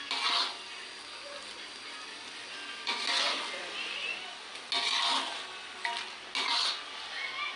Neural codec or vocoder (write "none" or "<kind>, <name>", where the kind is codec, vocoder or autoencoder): none